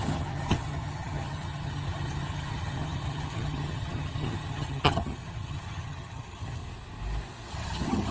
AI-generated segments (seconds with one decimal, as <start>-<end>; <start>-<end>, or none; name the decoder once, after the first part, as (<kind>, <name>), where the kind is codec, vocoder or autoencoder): 0.0-6.6 (vocoder, HiFi-GAN); 7.5-8.1